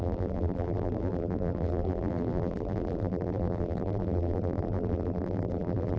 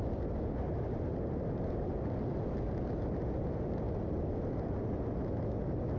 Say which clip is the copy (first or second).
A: first